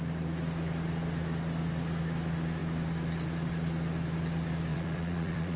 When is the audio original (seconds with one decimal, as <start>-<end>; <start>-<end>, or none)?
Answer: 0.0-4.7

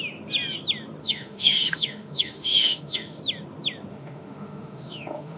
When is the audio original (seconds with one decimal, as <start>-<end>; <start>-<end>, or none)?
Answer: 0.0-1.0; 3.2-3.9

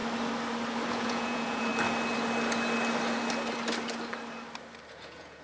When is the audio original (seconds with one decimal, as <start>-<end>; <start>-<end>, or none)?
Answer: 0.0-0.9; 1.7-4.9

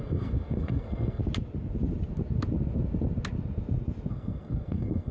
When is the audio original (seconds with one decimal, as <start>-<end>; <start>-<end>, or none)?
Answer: 1.2-4.1

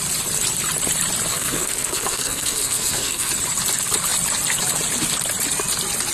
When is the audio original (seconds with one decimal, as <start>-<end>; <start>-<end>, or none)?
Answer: 0.0-1.3; 3.3-6.1

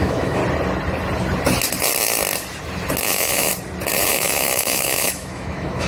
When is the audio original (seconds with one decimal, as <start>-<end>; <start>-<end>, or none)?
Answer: 0.4-3.0; 3.5-4.1